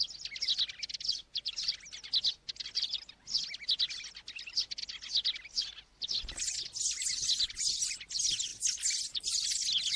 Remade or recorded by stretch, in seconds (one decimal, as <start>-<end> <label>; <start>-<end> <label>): 0.0-10.0 recorded